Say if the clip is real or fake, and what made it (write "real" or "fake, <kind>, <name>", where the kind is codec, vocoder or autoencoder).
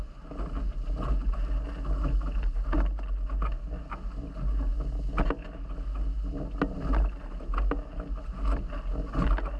real